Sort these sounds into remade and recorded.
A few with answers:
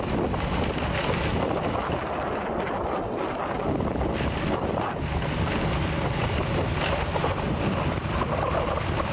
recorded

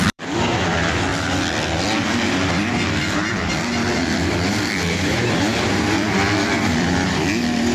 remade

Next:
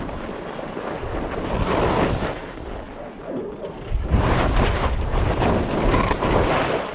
recorded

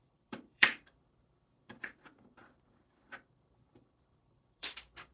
remade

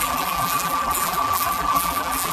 remade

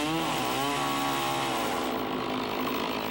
recorded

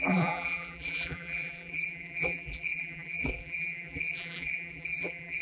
remade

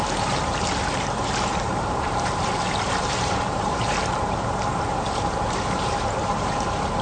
remade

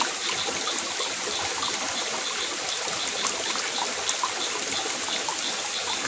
recorded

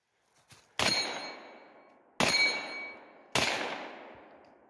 recorded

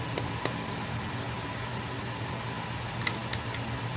remade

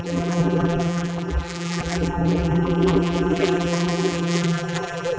remade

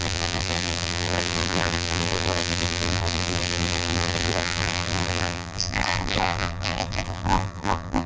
remade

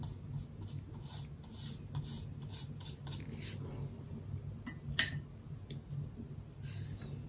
recorded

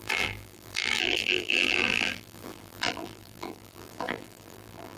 remade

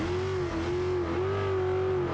recorded